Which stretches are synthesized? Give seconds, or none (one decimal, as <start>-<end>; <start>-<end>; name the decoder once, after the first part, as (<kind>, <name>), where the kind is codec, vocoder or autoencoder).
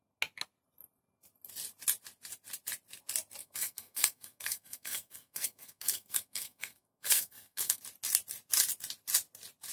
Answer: 3.4-7.8 (codec, SNAC)